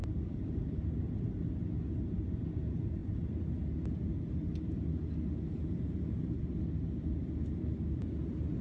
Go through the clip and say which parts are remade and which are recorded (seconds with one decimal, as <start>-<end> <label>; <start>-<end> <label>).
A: 0.0-1.3 remade; 1.3-3.0 recorded; 3.0-3.5 remade; 3.5-8.6 recorded